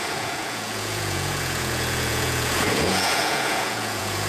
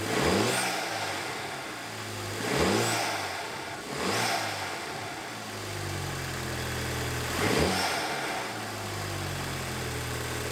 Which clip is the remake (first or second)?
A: first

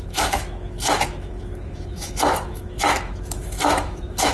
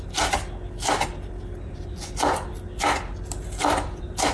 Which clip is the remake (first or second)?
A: first